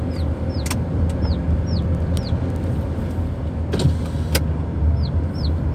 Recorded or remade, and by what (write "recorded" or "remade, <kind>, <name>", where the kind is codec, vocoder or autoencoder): recorded